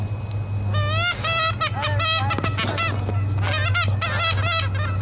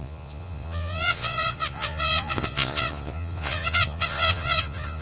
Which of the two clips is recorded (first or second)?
first